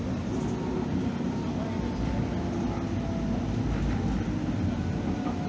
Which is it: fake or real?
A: real